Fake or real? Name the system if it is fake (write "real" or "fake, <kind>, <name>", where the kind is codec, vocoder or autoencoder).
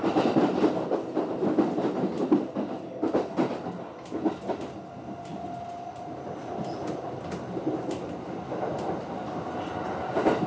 real